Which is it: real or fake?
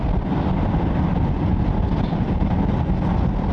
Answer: real